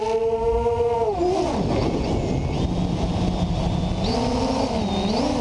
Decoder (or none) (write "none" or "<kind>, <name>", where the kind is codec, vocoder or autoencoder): none